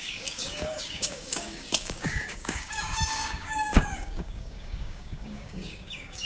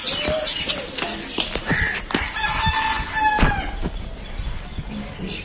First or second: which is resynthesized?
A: first